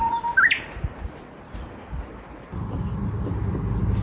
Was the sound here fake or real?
real